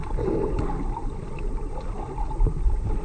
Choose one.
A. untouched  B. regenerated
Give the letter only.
A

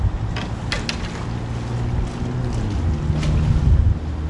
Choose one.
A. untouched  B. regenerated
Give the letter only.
A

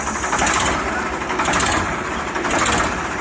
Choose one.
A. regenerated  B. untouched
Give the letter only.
B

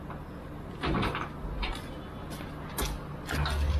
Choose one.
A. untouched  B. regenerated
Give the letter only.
A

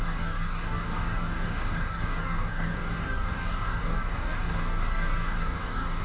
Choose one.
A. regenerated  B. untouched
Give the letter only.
A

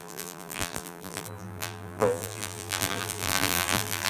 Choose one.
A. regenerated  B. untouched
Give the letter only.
A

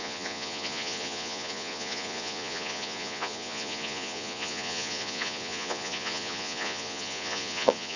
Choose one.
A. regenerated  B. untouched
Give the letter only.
A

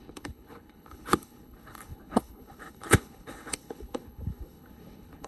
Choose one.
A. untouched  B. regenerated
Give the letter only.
B